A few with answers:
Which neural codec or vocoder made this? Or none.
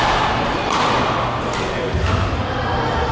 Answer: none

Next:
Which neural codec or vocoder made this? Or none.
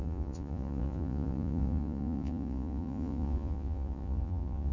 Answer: vocoder, Vocos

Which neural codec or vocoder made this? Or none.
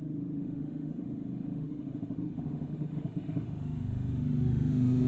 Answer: autoencoder, DAC-VAE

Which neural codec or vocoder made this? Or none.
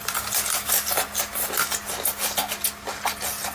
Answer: none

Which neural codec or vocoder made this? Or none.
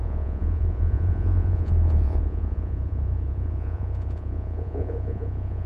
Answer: vocoder, Vocos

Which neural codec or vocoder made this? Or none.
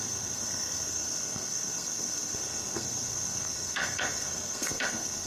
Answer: codec, SNAC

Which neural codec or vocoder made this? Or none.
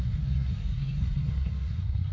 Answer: codec, SNAC